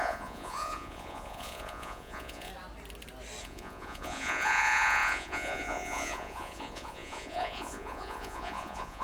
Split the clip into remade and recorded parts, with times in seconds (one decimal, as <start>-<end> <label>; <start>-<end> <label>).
0.0-2.5 remade; 2.5-3.4 recorded; 3.4-9.0 remade